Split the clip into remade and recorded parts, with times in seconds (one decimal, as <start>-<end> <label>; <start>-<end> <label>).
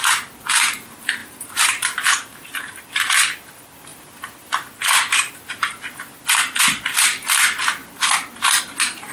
0.0-1.2 recorded; 1.2-2.9 remade; 2.9-9.1 recorded